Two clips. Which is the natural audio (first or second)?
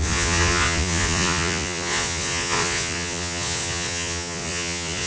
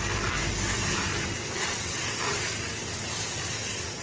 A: second